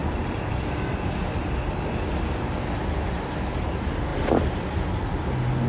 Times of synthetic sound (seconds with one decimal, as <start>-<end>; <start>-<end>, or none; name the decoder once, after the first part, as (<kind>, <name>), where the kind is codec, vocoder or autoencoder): 0.0-1.4 (vocoder, BigVGAN v2); 4.1-5.3